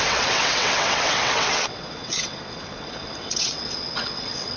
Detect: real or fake fake